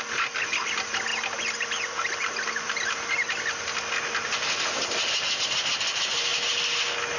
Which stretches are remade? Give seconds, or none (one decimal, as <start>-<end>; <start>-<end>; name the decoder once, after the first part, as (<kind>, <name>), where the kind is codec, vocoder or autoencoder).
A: none